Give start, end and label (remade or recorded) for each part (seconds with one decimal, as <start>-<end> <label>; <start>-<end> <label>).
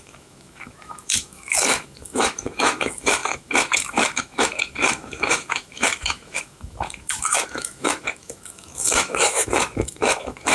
0.0-10.5 remade